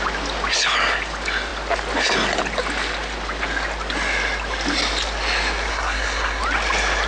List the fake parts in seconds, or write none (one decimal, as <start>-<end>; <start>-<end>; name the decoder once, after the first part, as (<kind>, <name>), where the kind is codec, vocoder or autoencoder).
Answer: 5.7-6.4 (codec, SNAC)